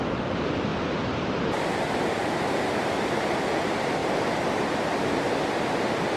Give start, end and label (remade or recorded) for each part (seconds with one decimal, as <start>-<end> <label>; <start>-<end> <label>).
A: 0.0-6.2 remade